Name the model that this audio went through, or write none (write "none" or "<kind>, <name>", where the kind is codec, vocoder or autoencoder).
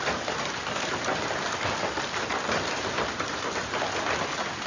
none